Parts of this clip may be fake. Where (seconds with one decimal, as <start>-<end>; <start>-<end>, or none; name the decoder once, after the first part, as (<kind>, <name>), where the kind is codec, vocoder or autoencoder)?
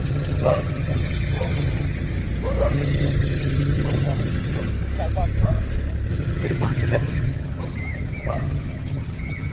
0.0-2.1 (vocoder, HiFi-GAN); 2.7-4.7; 6.1-9.5